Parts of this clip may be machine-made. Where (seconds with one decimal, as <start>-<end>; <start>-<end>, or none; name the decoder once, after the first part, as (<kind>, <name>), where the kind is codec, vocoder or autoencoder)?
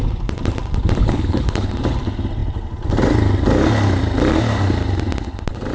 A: 1.0-1.7 (codec, HILCodec)